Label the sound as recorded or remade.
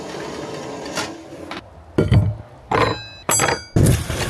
recorded